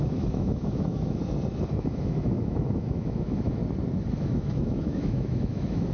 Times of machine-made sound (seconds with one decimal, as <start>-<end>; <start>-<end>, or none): 0.0-1.2; 1.8-3.6; 4.1-5.9